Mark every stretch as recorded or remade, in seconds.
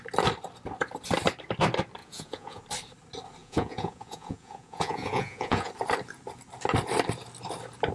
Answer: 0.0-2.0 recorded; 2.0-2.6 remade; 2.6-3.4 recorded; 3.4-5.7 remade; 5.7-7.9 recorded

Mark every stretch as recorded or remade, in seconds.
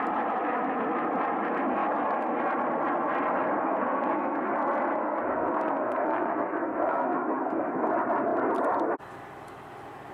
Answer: 0.0-3.6 recorded; 3.6-4.5 remade; 4.5-5.0 recorded; 5.0-7.9 remade; 7.9-10.1 recorded